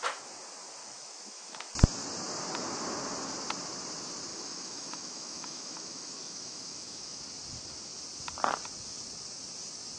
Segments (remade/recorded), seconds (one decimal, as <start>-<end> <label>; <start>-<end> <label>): 0.0-0.8 recorded; 0.8-1.7 remade; 1.7-4.3 recorded; 4.3-7.2 remade; 7.2-10.0 recorded